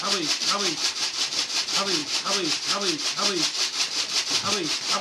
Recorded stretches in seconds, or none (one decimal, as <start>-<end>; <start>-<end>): 0.0-5.0